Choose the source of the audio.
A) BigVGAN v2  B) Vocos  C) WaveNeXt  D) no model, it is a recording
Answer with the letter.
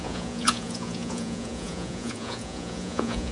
B